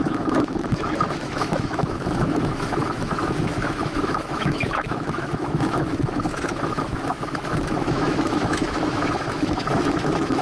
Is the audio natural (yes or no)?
no